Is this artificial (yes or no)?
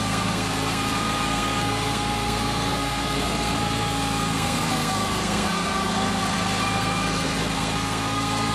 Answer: yes